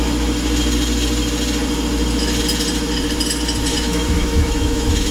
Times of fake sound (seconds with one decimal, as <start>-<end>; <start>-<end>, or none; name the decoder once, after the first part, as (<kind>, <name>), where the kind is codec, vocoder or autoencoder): 3.7-5.1 (autoencoder, DAC-VAE)